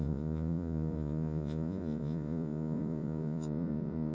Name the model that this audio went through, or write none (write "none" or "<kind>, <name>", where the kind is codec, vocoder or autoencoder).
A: vocoder, Vocos